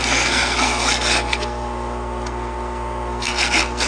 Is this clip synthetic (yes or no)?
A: yes